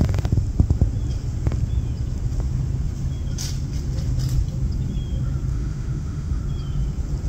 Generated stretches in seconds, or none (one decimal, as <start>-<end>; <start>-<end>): 5.5-6.4